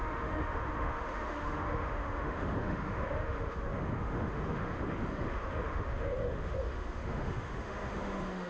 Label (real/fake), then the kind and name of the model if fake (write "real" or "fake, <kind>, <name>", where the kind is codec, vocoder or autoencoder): fake, autoencoder, DAC-VAE